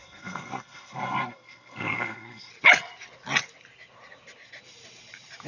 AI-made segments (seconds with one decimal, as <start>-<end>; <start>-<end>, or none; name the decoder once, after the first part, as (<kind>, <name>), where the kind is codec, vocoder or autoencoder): 0.0-2.5 (codec, SNAC)

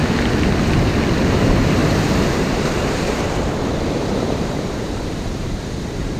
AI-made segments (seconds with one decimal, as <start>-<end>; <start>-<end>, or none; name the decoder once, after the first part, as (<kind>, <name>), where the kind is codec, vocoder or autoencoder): 1.8-5.5 (vocoder, BigVGAN v2)

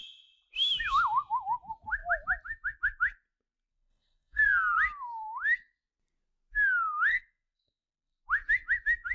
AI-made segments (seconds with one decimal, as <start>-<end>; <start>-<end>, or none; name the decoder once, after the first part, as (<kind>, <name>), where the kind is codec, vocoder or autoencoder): 3.7-4.4 (codec, SNAC); 7.1-8.2

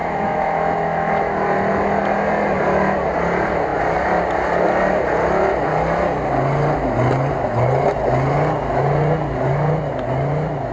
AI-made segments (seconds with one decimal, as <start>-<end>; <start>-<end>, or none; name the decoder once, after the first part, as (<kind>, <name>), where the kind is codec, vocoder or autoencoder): 0.0-1.2 (autoencoder, DAC-VAE)

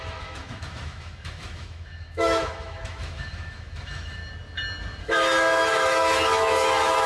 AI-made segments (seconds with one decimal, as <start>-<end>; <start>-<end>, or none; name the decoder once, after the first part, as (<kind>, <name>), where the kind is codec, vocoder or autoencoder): 0.0-4.2 (autoencoder, DAC-VAE); 5.0-7.1